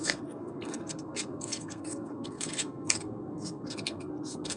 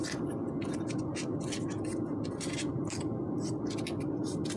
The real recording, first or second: second